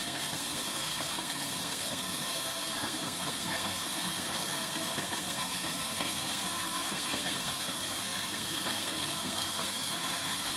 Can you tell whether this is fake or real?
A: fake